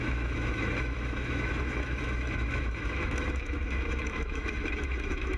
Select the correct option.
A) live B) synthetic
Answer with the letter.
B